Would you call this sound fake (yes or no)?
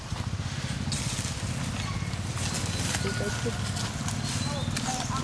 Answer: no